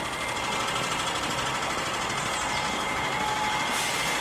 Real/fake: real